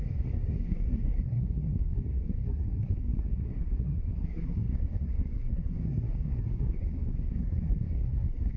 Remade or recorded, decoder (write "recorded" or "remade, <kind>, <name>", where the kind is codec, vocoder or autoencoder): remade, codec, SNAC